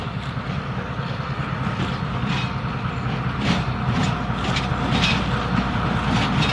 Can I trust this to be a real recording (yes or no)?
yes